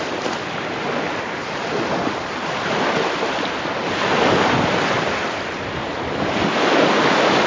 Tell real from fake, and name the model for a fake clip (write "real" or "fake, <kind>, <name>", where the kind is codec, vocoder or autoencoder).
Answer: real